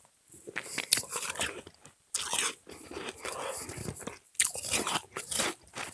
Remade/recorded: recorded